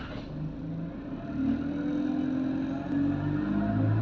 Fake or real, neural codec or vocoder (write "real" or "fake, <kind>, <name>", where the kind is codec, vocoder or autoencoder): real